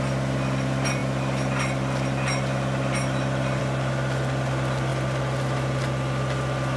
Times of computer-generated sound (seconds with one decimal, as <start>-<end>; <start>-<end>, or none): none